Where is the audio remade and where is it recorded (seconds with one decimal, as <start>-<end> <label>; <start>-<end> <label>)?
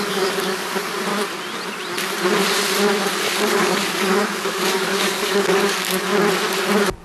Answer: 0.0-1.1 remade; 1.1-3.5 recorded; 3.5-6.1 remade; 6.1-7.0 recorded